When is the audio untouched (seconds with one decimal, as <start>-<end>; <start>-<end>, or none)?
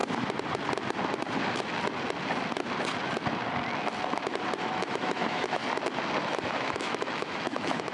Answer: 0.0-4.6; 5.6-6.2